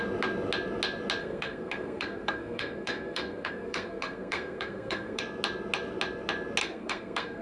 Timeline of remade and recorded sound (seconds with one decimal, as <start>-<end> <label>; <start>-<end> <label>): 0.0-1.2 recorded; 1.2-5.2 remade; 5.2-6.6 recorded; 6.6-7.4 remade